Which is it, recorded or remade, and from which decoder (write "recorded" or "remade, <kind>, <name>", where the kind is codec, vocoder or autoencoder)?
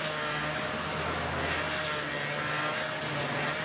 recorded